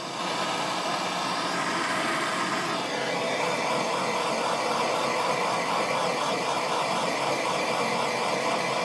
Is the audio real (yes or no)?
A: yes